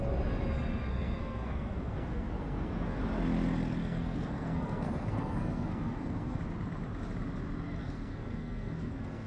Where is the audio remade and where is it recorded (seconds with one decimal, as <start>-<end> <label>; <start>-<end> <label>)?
0.0-0.9 recorded; 0.9-3.0 remade; 3.0-3.8 recorded; 3.8-6.4 remade; 6.4-7.8 recorded; 7.8-9.3 remade